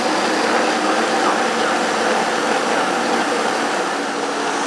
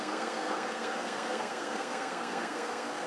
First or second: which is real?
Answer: first